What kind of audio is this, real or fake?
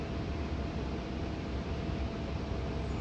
real